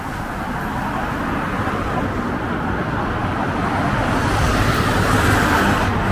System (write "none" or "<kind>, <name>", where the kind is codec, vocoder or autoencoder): none